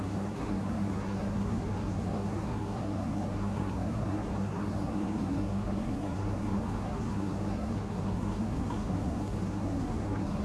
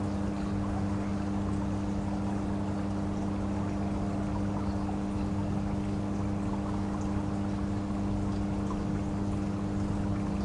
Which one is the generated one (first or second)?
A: first